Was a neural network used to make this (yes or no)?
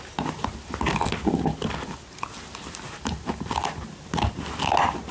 no